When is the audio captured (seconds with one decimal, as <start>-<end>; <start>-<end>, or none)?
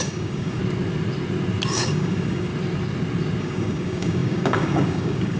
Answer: 0.6-1.7; 2.5-3.4